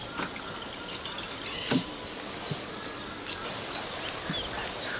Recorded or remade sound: recorded